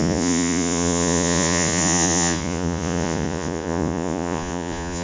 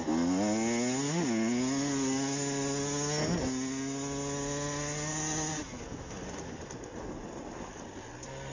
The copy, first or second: first